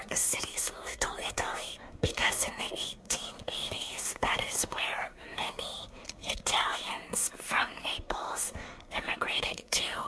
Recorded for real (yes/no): no